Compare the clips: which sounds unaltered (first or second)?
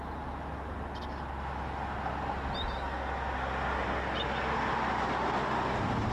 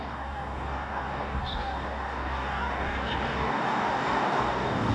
first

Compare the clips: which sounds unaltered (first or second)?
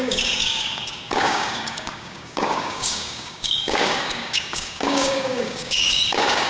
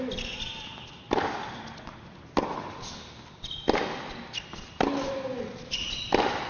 second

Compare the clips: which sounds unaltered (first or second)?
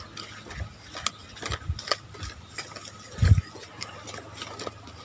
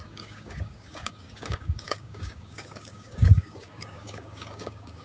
first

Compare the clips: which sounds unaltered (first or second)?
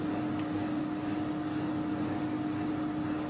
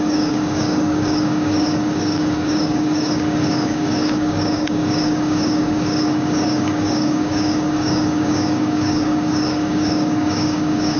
first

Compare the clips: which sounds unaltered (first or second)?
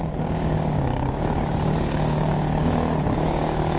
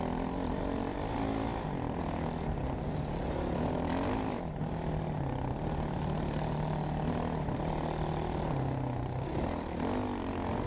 second